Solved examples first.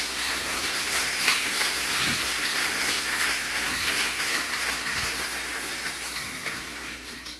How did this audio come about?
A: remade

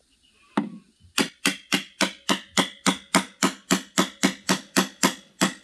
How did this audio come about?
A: recorded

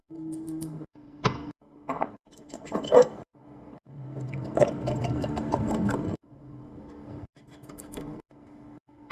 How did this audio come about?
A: remade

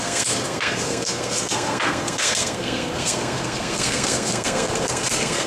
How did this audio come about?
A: remade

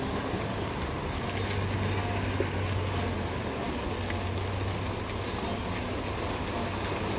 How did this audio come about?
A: recorded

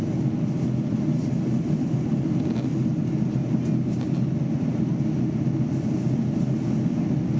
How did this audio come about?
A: recorded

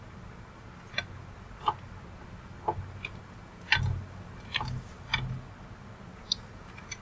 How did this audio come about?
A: recorded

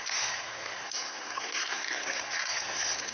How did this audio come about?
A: remade